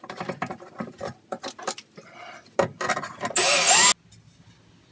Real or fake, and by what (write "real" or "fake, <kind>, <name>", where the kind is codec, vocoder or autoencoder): real